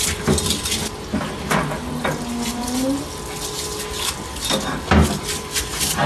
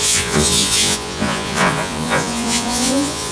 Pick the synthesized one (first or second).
second